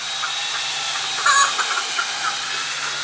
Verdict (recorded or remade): recorded